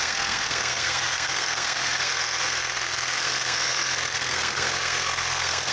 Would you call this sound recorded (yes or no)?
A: no